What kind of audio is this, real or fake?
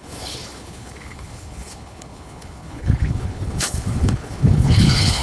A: fake